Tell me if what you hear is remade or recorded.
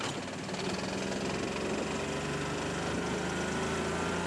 recorded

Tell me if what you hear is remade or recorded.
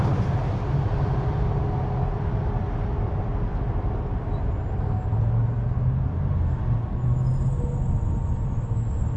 recorded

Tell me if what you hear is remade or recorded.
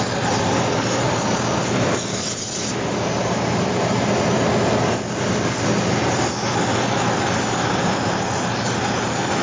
recorded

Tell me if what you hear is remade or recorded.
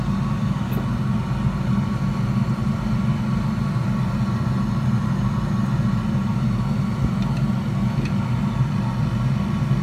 recorded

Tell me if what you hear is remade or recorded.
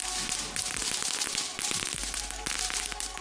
recorded